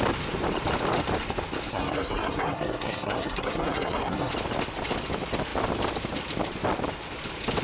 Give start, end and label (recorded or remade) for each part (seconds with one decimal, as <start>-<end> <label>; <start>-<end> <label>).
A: 0.0-1.7 recorded; 1.7-4.3 remade; 4.3-7.6 recorded